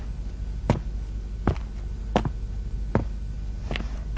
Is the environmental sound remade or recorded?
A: recorded